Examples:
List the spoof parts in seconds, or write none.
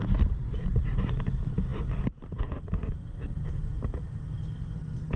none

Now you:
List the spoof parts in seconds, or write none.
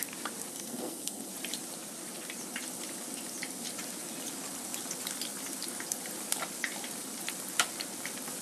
0.5-1.3 (codec, SNAC)